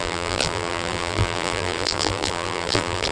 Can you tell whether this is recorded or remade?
remade